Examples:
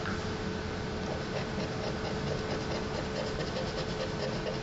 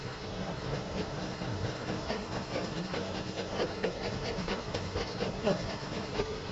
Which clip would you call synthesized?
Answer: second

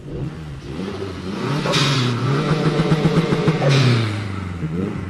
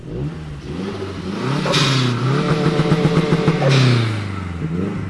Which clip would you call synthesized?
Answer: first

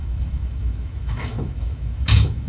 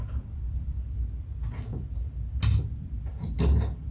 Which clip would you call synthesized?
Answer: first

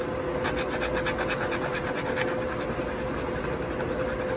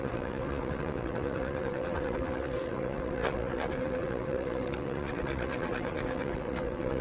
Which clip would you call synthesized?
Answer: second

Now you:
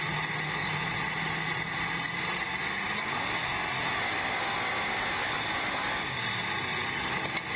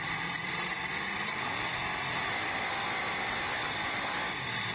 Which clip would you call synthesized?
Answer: second